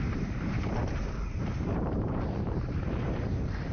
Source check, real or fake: fake